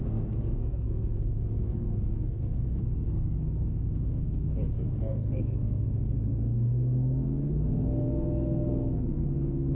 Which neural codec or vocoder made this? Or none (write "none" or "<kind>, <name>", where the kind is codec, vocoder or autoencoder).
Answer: codec, SNAC